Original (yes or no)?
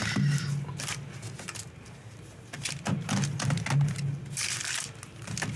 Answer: yes